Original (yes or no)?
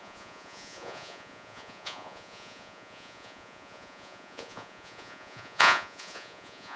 no